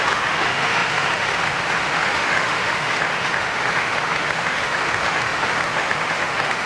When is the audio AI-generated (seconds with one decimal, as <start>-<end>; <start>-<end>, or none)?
0.0-6.7

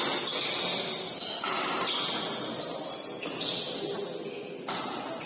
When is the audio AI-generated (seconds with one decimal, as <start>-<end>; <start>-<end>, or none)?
none